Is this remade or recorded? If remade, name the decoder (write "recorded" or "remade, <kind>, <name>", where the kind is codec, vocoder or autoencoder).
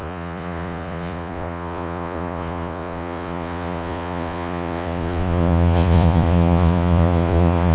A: remade, vocoder, Vocos